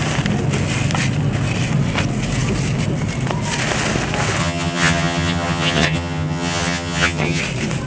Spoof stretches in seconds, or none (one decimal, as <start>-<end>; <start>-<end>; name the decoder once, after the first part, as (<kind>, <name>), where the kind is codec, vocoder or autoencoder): 4.4-7.4 (vocoder, HiFi-GAN)